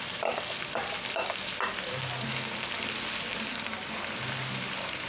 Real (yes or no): no